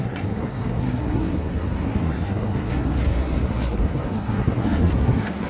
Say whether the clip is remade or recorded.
remade